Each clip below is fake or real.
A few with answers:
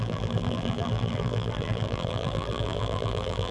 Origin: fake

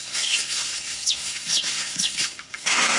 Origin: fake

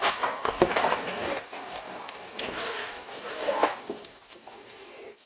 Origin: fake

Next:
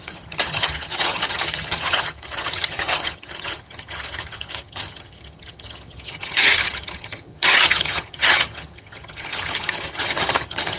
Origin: fake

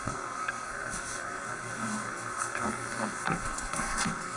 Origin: fake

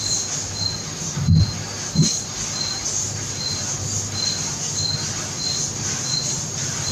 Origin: real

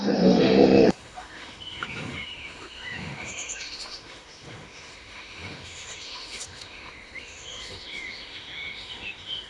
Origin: fake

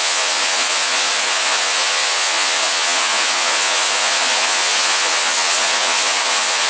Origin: fake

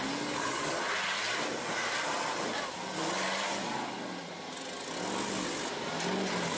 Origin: real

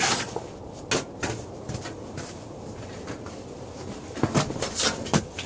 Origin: real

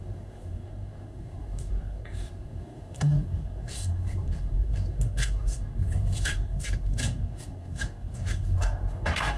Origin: fake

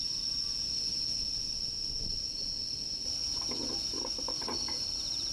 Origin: real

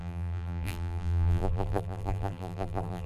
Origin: fake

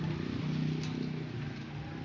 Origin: real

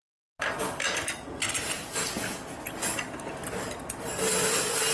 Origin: real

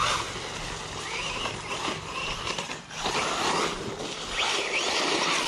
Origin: real